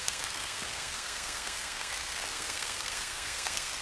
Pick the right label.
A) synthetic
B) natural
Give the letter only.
A